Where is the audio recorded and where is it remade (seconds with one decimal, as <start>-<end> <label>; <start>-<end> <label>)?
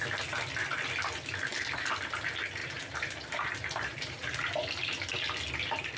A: 0.0-2.6 recorded; 2.6-4.4 remade; 4.4-6.0 recorded